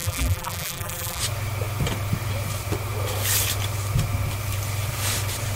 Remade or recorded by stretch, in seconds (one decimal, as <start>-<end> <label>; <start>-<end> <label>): 0.0-1.2 remade; 1.2-5.6 recorded